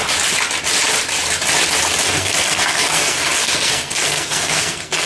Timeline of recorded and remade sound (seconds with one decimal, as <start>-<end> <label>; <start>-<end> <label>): 0.0-2.0 recorded; 2.0-5.1 remade